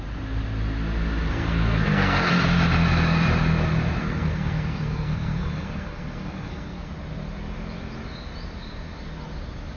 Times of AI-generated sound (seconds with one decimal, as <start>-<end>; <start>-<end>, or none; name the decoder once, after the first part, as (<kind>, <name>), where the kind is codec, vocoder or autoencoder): 1.3-2.3 (codec, SNAC); 4.0-6.9